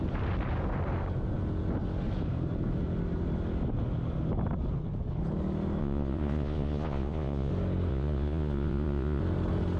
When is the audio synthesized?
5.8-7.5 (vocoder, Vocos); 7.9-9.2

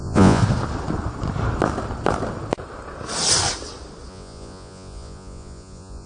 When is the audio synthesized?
0.0-0.4 (vocoder, Vocos); 4.1-6.1

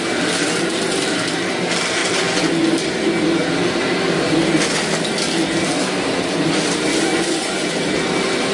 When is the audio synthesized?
7.1-7.7 (vocoder, Vocos)

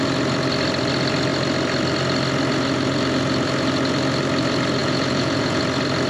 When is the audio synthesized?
4.8-5.6 (vocoder, Vocos)

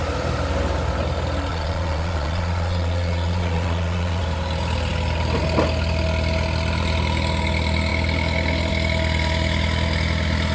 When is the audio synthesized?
1.5-4.2 (vocoder, Vocos)

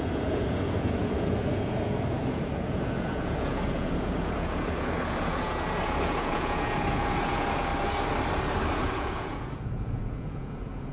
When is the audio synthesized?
0.0-7.7 (vocoder, Vocos); 8.7-10.9

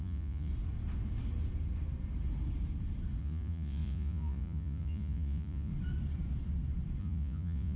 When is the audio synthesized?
0.0-0.5 (vocoder, Vocos); 3.2-5.7; 7.0-7.8

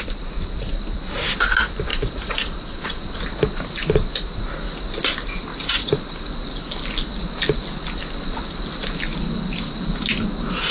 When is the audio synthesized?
1.9-3.2 (vocoder, Vocos); 5.5-6.3